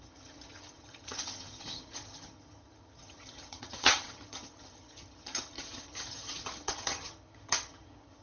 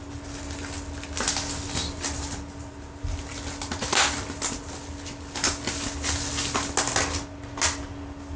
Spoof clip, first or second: first